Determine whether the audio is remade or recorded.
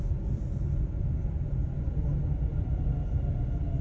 recorded